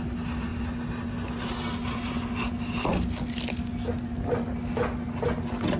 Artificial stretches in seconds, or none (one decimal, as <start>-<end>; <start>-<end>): none